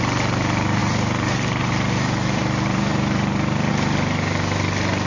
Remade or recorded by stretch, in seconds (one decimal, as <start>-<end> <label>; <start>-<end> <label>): 0.0-0.8 recorded; 0.8-3.7 remade; 3.7-5.1 recorded